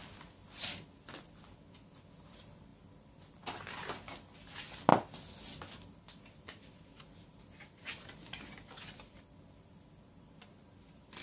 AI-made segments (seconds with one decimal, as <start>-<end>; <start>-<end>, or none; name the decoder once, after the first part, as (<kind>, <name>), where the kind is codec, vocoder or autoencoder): none